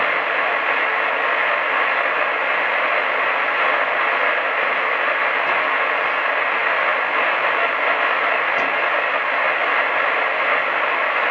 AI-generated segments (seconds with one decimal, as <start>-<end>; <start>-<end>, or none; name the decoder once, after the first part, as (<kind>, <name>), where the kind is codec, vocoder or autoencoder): none